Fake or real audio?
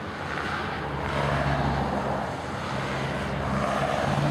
real